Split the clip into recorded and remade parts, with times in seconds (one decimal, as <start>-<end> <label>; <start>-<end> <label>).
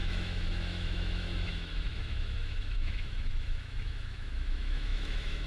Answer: 0.0-5.5 remade